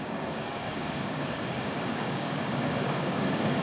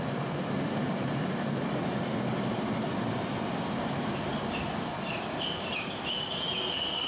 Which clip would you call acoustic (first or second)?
second